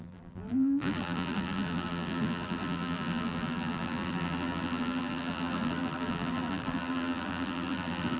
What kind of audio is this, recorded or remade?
remade